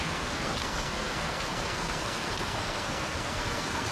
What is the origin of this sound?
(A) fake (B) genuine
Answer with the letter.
A